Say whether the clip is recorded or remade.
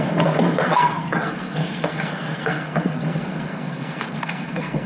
remade